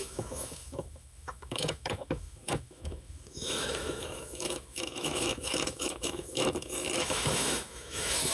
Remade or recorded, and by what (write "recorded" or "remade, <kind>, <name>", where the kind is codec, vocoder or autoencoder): remade, autoencoder, DAC-VAE